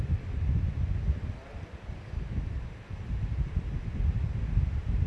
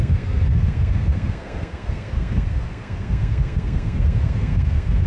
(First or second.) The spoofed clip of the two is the second